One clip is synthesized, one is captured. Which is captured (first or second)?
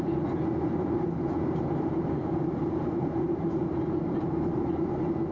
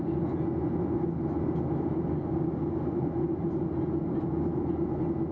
second